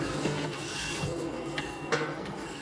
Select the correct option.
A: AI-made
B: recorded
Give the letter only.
A